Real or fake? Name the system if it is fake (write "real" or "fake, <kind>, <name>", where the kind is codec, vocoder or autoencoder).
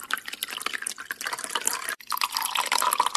real